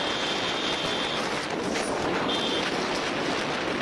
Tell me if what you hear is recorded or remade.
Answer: recorded